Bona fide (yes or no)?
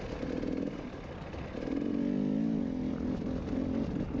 yes